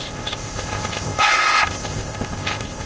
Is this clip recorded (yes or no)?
no